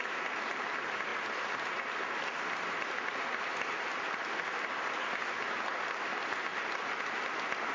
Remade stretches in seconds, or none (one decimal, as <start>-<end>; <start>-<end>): 6.5-7.1